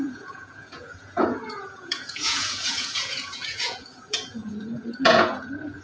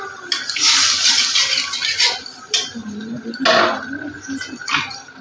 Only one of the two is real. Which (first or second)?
second